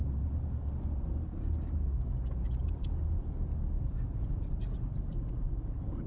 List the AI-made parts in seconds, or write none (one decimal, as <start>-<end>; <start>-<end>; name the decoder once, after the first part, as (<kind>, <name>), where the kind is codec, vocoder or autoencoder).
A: 1.3-2.1 (codec, DAC)